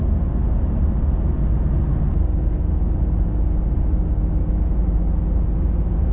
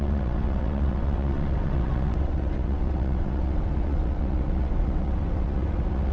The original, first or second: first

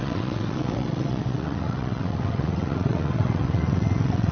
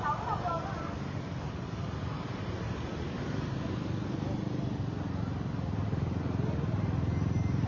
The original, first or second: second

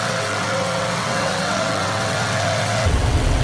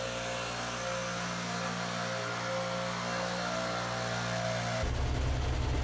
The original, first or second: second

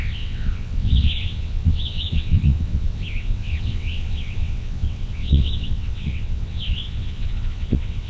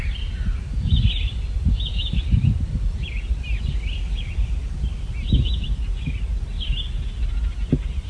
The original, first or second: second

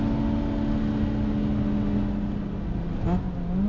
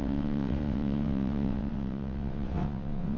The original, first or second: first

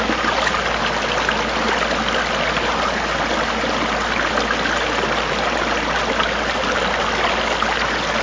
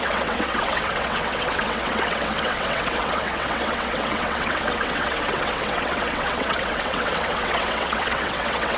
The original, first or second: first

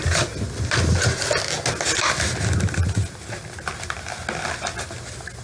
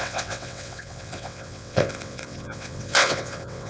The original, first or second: first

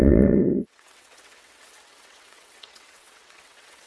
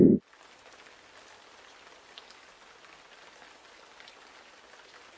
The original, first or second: second